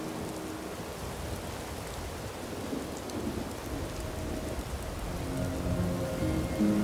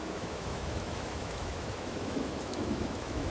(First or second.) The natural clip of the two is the first